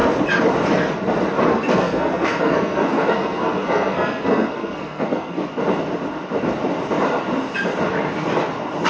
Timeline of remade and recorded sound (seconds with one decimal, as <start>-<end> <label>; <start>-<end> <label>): 0.0-1.5 recorded; 1.5-5.4 remade; 5.4-8.9 recorded